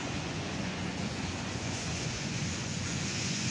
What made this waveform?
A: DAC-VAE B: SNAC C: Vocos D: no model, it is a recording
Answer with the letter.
C